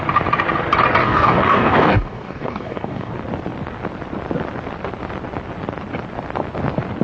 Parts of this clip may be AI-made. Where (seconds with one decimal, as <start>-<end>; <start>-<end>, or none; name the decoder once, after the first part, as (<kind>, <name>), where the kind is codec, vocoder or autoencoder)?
1.0-3.1 (codec, DAC)

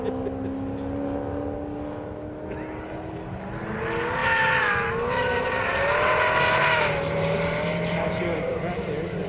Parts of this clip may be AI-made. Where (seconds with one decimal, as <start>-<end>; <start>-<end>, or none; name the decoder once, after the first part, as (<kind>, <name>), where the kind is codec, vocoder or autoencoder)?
none